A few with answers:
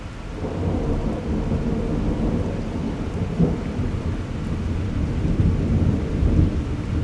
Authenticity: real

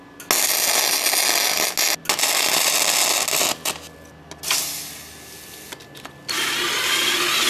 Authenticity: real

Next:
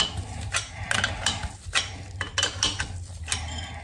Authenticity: real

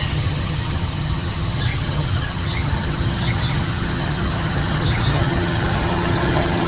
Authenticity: fake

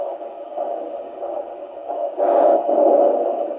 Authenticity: fake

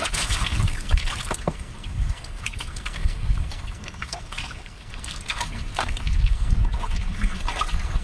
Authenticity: fake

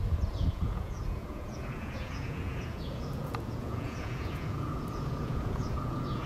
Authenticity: fake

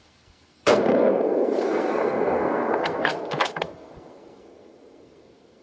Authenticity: fake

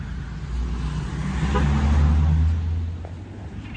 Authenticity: real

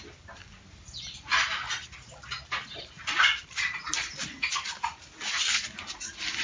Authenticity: real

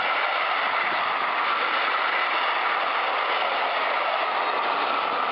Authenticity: real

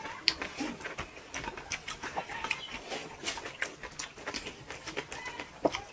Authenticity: real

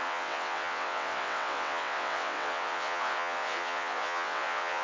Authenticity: fake